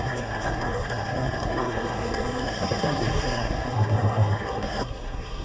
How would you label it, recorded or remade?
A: remade